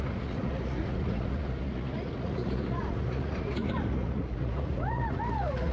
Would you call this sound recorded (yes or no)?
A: no